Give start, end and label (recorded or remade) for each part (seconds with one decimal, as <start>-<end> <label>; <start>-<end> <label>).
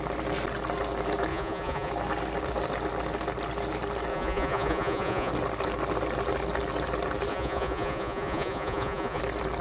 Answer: 0.0-1.3 recorded; 1.3-1.9 remade; 1.9-4.1 recorded; 4.1-5.3 remade; 5.3-7.3 recorded; 7.3-9.2 remade; 9.2-9.6 recorded